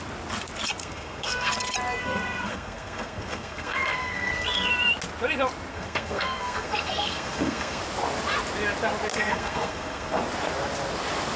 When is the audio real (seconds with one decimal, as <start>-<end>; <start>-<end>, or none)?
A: 0.0-0.8; 1.5-2.0; 4.7-5.7; 7.8-9.1; 10.2-11.4